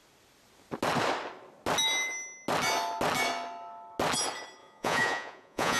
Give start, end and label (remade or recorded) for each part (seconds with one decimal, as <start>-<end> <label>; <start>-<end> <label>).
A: 0.0-4.6 recorded; 4.6-5.8 remade